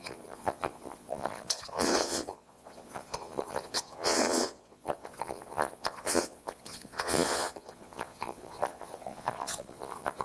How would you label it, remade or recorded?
remade